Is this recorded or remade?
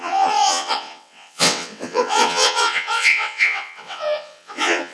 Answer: remade